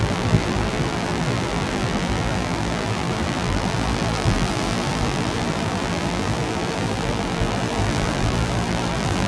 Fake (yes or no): yes